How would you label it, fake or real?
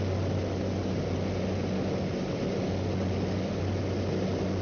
real